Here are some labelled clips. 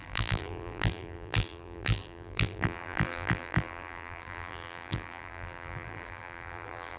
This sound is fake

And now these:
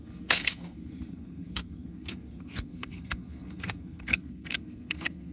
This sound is fake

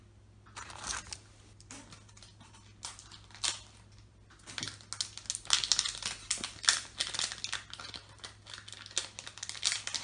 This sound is real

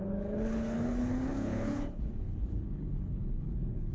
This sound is fake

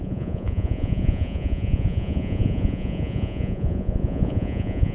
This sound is fake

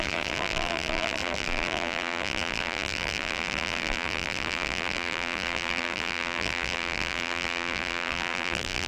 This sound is fake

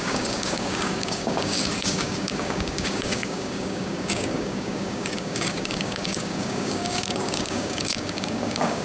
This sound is fake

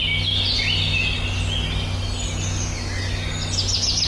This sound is real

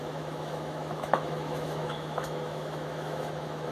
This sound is fake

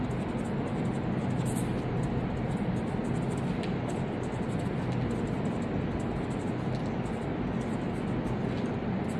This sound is real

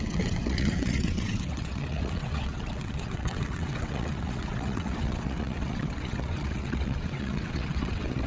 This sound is fake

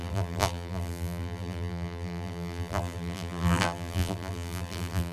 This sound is fake